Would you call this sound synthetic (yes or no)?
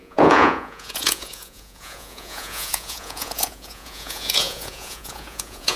yes